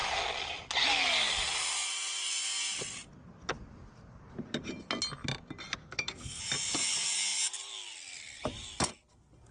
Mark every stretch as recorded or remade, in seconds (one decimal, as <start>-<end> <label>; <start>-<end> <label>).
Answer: 0.0-5.8 recorded; 5.8-6.4 remade; 6.4-9.5 recorded